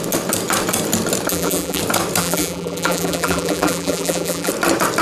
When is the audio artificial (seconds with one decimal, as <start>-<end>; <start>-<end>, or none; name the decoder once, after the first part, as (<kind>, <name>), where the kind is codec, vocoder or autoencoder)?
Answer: 1.3-1.8 (vocoder, BigVGAN v2); 2.2-4.5

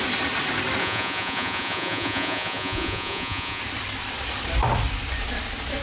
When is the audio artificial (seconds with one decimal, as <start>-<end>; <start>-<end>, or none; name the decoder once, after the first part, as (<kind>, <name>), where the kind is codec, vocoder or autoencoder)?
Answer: 0.8-3.6 (vocoder, Vocos)

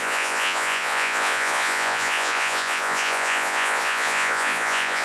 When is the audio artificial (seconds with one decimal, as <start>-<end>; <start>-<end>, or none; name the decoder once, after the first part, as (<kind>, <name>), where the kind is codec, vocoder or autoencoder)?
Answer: 0.0-5.0 (vocoder, Vocos)

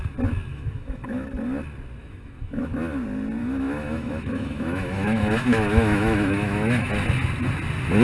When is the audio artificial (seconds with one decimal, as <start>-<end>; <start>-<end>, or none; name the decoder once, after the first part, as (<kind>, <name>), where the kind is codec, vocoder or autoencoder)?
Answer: 0.5-1.3 (autoencoder, DAC-VAE); 2.0-2.6; 3.4-6.9

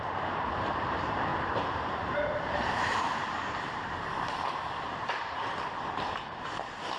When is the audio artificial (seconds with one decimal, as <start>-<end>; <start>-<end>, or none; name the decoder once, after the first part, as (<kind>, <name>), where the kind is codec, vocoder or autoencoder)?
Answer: 0.0-7.0 (vocoder, BigVGAN v2)

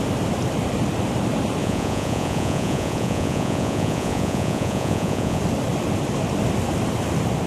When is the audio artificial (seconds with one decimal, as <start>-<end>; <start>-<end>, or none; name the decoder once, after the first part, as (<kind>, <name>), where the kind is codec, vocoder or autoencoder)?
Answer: 1.6-5.4 (vocoder, Vocos)

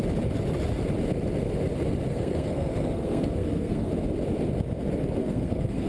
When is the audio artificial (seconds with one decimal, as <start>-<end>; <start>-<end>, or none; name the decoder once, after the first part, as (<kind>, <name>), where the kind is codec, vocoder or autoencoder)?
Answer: 2.1-3.9 (codec, SNAC); 5.2-5.9

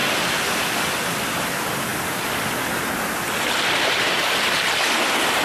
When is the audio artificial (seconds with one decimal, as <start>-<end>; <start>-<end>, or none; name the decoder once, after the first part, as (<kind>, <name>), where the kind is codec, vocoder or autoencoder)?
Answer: none